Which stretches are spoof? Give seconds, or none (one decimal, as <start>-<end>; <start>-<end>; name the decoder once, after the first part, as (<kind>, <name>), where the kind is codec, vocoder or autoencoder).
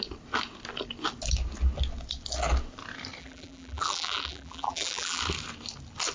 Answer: 3.2-5.2 (vocoder, BigVGAN v2)